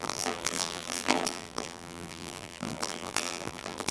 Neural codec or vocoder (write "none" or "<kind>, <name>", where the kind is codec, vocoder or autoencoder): vocoder, BigVGAN v2